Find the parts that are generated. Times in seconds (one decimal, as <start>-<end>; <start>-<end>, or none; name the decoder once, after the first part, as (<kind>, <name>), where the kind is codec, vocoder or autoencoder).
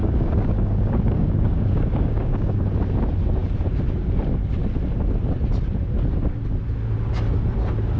0.0-2.6 (codec, DAC)